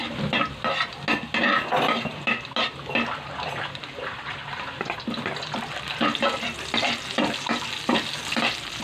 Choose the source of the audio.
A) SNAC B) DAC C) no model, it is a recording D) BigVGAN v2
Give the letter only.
C